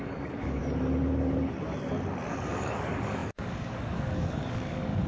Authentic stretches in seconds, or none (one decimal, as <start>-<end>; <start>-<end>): 0.6-2.3